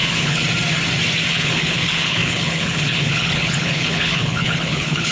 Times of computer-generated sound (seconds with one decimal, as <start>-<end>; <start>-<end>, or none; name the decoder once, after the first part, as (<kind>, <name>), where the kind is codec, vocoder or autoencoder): 0.0-0.4 (codec, HILCodec); 1.3-5.1